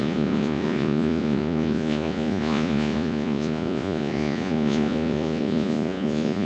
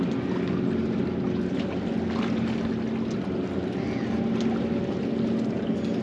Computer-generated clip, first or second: first